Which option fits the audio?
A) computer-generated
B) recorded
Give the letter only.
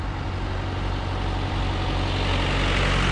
B